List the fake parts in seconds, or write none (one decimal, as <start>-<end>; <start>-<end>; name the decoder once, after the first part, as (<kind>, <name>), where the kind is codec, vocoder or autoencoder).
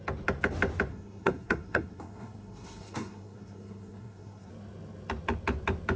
0.9-4.5 (codec, SNAC)